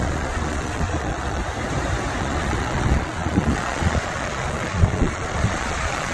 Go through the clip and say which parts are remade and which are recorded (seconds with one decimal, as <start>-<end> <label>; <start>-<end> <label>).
0.0-1.4 remade; 1.4-2.2 recorded; 2.2-6.1 remade